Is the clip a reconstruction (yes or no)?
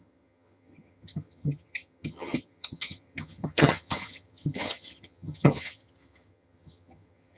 yes